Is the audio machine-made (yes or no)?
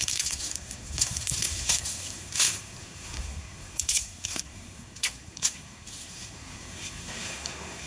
yes